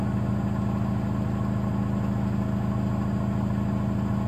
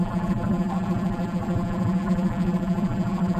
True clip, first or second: first